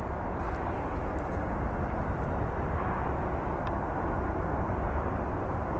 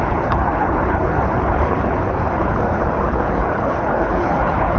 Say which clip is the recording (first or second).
first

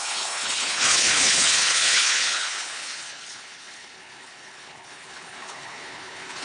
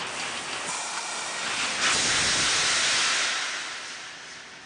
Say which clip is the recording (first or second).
second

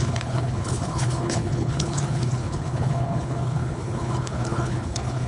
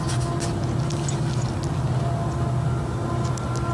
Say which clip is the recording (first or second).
second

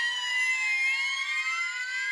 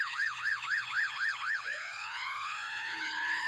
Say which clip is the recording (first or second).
first